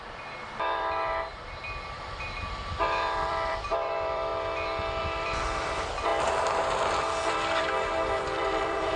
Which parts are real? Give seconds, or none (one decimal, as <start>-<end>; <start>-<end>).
4.3-5.0; 6.1-7.3